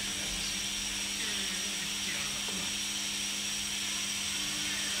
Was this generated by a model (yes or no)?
no